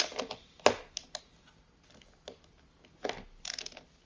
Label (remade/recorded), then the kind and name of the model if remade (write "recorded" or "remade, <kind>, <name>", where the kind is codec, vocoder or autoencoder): recorded